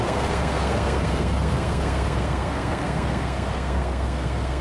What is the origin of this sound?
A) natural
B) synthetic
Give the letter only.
B